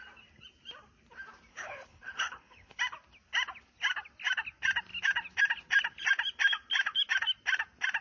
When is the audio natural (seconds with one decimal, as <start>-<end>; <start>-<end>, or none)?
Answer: 0.0-1.5; 2.8-8.0